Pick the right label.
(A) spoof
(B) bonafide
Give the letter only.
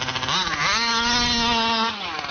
B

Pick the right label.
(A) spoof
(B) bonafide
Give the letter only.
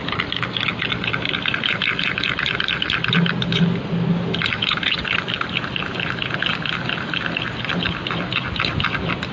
B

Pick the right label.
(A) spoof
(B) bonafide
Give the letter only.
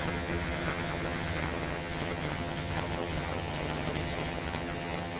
A